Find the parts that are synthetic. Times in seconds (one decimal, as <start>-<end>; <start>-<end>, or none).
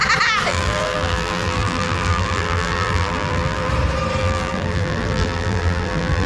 0.5-3.7; 4.2-6.3